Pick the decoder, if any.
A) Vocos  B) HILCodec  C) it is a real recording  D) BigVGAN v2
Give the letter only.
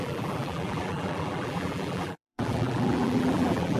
D